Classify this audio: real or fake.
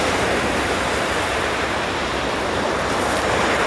fake